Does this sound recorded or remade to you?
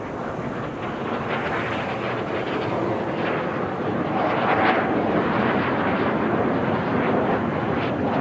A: recorded